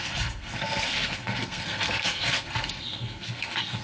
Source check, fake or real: fake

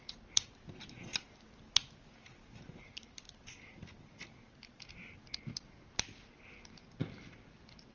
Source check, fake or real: real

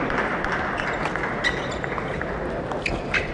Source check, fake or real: real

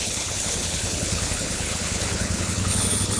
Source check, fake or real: fake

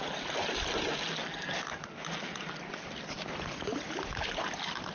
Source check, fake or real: real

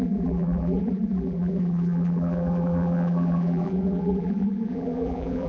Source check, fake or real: fake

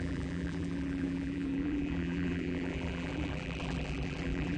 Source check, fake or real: fake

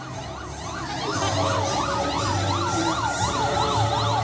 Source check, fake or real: real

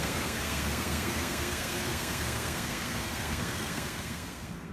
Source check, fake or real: fake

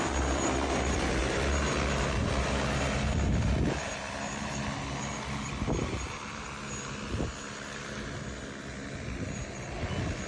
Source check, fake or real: real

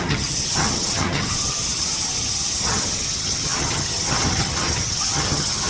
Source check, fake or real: fake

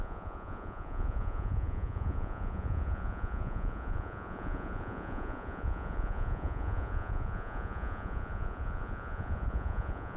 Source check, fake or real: fake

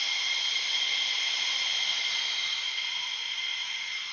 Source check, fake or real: real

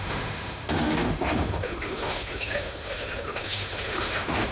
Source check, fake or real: fake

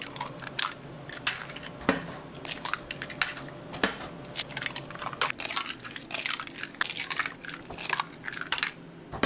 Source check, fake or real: real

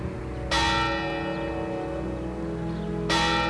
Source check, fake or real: real